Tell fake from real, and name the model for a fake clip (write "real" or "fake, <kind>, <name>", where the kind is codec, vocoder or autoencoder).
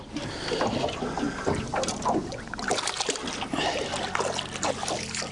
real